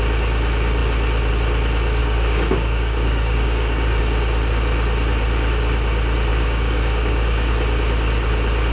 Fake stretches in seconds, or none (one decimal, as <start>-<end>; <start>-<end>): 2.0-4.0; 6.3-7.5